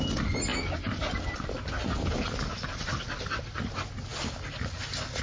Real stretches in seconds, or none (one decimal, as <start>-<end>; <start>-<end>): 0.0-5.2